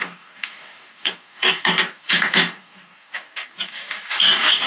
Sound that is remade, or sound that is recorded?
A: remade